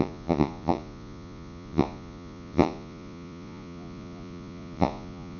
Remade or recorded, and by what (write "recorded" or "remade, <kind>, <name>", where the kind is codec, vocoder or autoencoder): remade, vocoder, Vocos